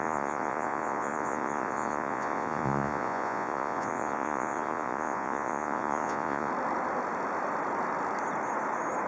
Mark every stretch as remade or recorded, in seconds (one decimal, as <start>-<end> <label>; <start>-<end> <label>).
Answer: 0.0-6.5 remade; 6.5-9.1 recorded